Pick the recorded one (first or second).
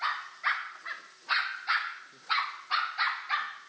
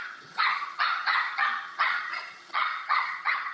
first